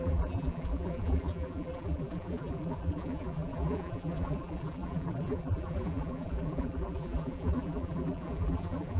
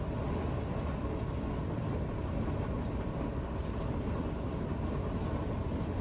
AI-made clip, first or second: first